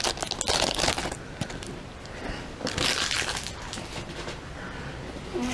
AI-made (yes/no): no